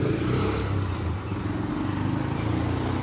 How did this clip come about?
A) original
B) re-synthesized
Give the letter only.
A